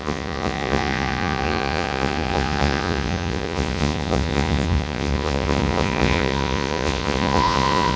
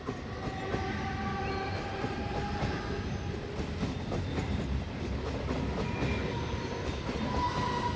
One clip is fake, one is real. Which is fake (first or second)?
first